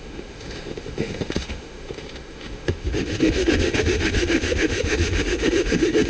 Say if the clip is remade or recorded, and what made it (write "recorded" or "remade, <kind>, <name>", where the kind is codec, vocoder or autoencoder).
remade, autoencoder, DAC-VAE